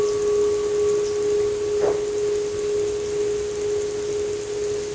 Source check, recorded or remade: recorded